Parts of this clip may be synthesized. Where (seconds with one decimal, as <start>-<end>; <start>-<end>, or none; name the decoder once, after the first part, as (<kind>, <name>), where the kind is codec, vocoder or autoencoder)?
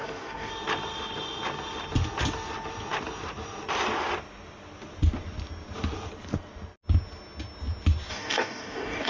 0.0-0.5 (codec, DAC); 8.1-9.1